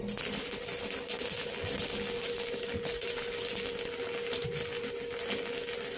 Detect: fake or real real